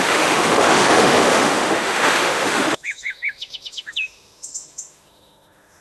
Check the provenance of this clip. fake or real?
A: fake